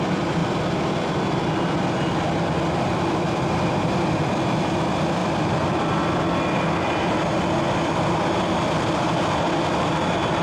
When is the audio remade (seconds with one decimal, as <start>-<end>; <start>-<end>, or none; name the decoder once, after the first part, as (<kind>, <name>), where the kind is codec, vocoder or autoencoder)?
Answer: none